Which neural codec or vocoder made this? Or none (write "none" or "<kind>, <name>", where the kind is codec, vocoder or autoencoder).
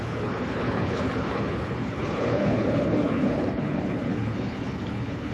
codec, HILCodec